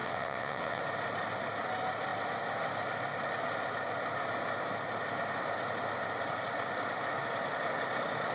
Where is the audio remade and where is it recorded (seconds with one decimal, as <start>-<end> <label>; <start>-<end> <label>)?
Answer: 0.0-0.8 remade; 0.8-8.3 recorded